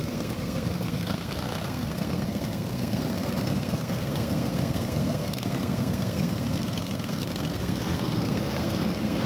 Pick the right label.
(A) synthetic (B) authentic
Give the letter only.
A